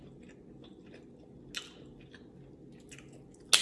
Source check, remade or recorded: recorded